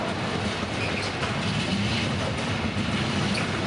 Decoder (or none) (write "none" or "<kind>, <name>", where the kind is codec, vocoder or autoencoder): none